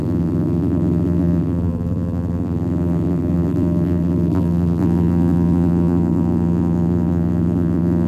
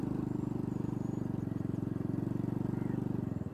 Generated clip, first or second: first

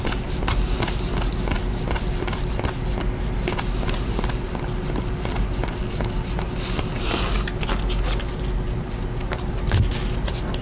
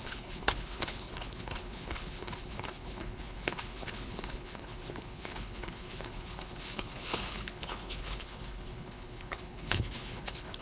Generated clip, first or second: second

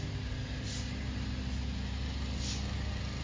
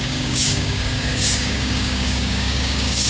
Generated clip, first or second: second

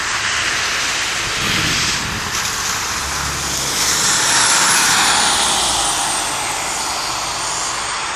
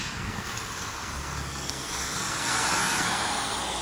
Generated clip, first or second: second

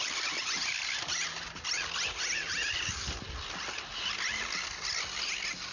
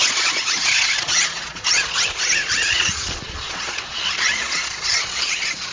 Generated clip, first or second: second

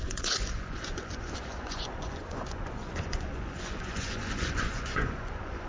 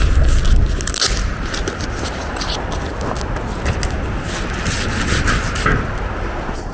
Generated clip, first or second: first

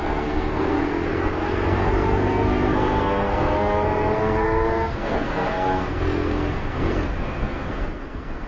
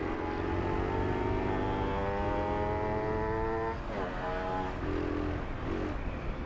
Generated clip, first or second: first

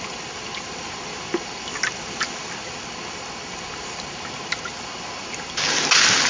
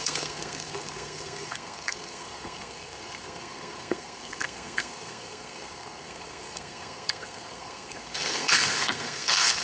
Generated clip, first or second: second